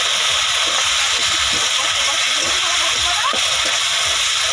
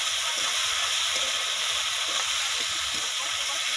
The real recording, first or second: first